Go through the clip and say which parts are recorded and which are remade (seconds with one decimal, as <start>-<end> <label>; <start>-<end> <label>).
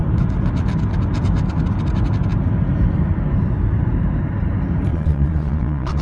0.0-4.9 recorded; 4.9-6.0 remade